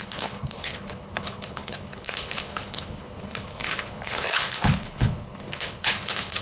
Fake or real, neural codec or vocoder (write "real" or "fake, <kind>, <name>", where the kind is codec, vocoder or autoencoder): fake, codec, HILCodec